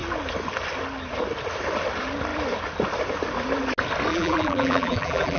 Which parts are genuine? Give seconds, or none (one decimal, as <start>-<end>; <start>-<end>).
0.0-4.1